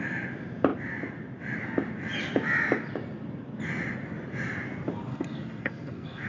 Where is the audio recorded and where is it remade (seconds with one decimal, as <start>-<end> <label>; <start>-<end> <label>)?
0.0-5.1 recorded; 5.1-6.3 remade